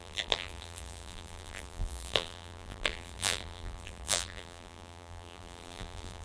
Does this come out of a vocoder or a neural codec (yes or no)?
yes